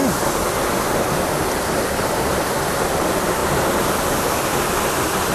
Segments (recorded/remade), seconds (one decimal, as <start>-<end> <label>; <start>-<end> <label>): 0.0-2.0 recorded; 2.0-3.4 remade; 3.4-5.3 recorded